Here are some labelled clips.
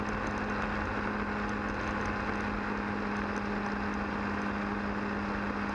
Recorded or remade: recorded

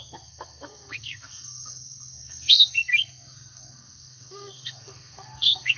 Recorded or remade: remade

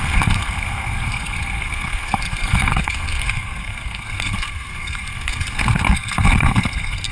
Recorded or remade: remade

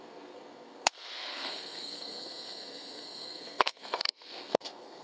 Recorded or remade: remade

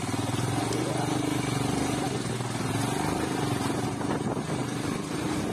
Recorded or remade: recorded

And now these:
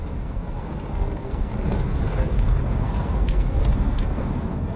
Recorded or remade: remade